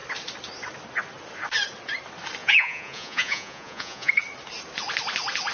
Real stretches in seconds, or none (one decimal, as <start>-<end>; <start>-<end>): 0.0-2.4; 4.1-5.5